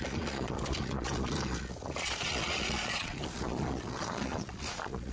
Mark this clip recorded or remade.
remade